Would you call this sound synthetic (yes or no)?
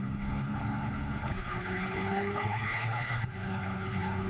yes